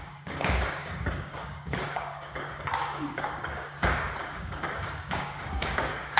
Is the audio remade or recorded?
remade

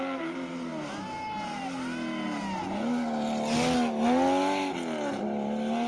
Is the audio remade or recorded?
recorded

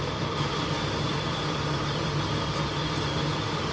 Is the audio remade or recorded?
recorded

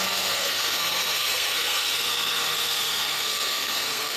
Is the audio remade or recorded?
remade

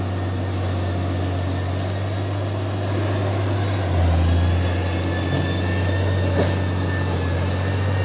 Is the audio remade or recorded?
recorded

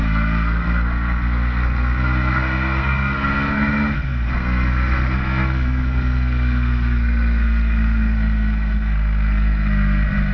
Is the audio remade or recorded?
remade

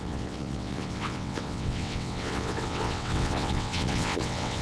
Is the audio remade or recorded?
remade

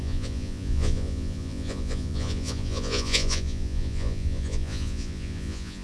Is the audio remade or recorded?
remade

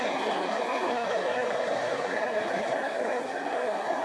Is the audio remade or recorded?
remade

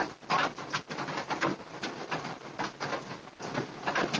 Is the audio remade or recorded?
recorded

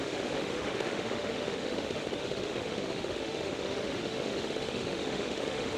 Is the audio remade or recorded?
remade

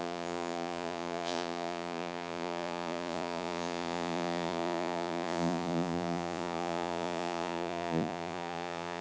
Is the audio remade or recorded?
remade